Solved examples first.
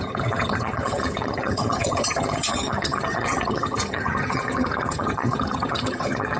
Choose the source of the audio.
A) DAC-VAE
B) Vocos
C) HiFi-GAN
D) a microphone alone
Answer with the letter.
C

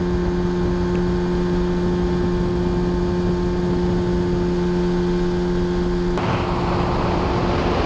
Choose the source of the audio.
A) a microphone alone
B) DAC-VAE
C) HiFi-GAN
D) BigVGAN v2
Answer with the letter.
A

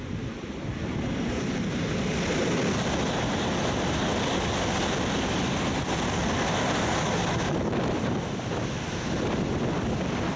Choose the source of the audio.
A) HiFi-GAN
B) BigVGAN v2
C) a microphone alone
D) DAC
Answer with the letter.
C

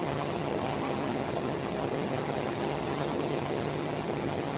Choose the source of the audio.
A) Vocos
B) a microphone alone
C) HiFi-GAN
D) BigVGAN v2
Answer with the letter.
C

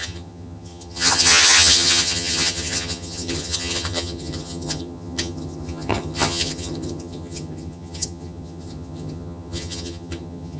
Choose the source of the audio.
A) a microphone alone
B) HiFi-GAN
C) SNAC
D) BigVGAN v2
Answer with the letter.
B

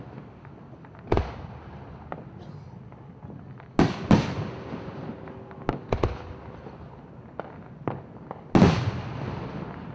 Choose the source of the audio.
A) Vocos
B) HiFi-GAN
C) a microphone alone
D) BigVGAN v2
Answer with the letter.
C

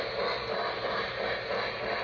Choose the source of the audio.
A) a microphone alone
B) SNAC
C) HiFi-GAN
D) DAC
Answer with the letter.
A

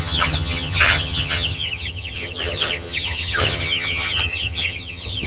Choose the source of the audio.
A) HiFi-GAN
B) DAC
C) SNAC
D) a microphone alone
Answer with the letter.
A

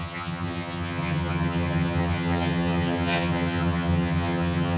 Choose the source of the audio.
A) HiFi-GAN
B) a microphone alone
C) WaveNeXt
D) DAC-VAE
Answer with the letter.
A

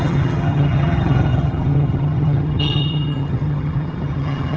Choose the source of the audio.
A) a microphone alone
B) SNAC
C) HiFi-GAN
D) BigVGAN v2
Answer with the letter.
C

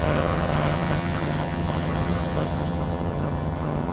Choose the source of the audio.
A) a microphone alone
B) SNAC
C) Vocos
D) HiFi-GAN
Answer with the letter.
D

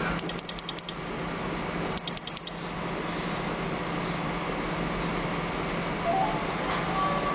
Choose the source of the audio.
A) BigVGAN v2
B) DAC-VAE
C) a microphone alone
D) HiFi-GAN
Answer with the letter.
C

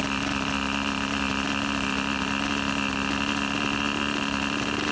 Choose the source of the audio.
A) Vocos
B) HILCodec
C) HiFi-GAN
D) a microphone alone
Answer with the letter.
D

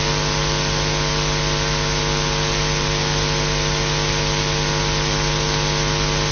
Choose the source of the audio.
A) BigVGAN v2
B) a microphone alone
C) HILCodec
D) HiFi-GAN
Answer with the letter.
B